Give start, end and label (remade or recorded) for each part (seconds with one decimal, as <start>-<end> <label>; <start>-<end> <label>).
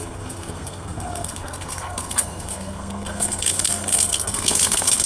0.0-5.1 remade